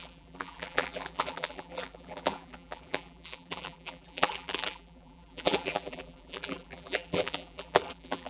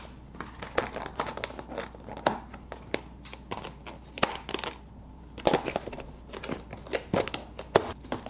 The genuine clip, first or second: second